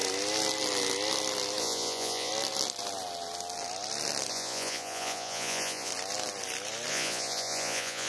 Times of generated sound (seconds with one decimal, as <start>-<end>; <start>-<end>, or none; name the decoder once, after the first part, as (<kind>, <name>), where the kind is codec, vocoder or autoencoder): 1.6-2.3 (vocoder, Vocos); 4.3-5.9; 6.9-8.1